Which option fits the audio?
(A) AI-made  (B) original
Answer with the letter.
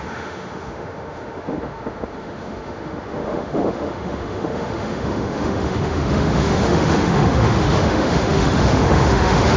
A